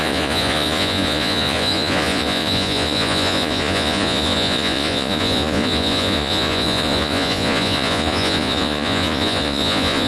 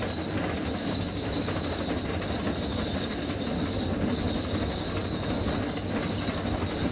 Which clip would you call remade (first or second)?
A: first